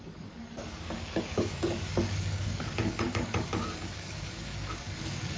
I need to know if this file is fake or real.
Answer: fake